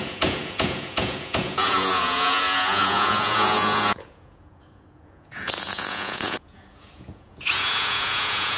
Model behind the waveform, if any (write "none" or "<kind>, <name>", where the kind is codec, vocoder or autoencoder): vocoder, Vocos